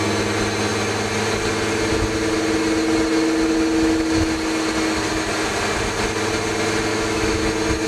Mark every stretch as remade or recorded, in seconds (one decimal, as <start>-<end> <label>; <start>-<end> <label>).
0.0-6.9 recorded; 6.9-7.4 remade; 7.4-7.9 recorded